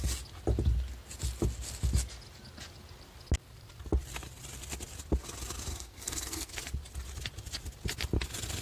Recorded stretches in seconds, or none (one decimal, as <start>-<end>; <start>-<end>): 0.0-5.7; 6.5-8.6